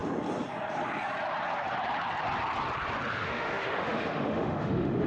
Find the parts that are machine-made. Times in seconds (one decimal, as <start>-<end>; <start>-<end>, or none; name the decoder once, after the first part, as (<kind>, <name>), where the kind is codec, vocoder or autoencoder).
3.1-5.1 (autoencoder, DAC-VAE)